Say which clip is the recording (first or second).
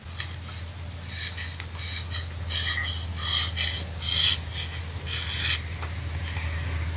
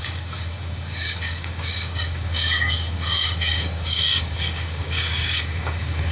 first